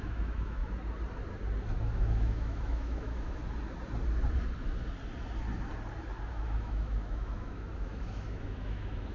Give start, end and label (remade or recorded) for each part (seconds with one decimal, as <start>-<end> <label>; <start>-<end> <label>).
0.0-0.6 remade; 0.6-1.8 recorded; 1.8-3.4 remade; 3.4-6.3 recorded; 6.3-9.1 remade